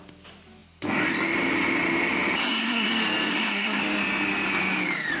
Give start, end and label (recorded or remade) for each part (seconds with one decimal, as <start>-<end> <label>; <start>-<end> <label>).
0.0-2.4 recorded; 2.4-2.9 remade; 2.9-3.3 recorded; 3.3-3.8 remade; 3.8-5.2 recorded